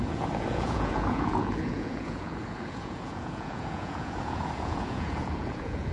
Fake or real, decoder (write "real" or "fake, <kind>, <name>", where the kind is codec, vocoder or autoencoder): fake, vocoder, Vocos